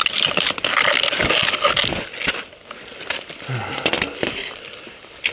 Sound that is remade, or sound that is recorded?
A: recorded